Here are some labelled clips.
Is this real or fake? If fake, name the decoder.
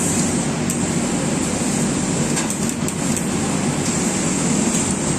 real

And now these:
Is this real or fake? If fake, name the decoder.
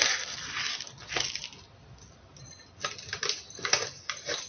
real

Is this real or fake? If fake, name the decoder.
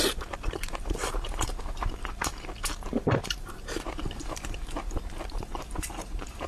fake, vocoder, BigVGAN v2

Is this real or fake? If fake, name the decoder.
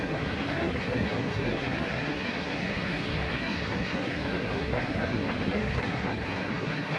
fake, codec, SNAC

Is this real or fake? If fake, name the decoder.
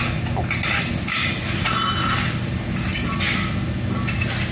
real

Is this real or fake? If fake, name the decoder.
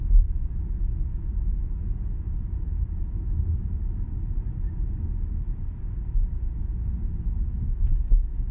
real